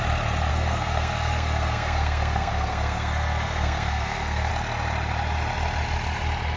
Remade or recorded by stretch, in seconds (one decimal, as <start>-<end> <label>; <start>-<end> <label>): 0.0-0.5 recorded; 0.5-4.5 remade; 4.5-6.6 recorded